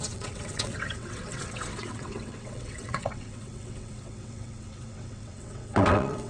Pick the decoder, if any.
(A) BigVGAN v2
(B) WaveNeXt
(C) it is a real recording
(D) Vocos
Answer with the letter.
B